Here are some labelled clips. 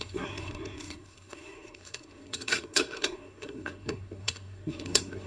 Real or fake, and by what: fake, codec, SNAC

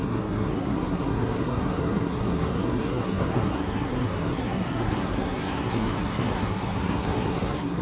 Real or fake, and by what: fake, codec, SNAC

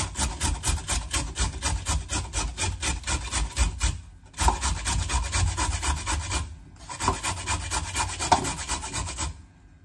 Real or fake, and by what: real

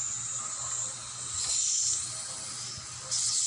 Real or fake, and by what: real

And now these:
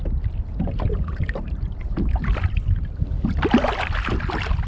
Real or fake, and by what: real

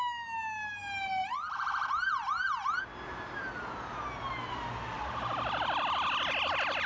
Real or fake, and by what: real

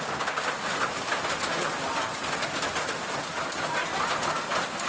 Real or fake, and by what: real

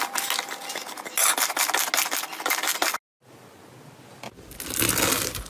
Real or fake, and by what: real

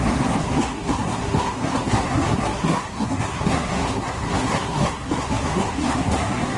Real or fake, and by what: fake, codec, SNAC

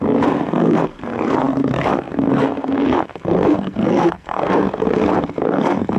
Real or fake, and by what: fake, codec, SNAC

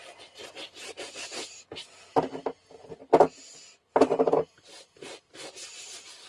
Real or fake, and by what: real